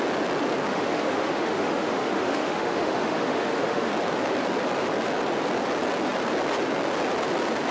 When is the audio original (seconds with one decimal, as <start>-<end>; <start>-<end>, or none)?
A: 0.0-0.7; 3.9-7.7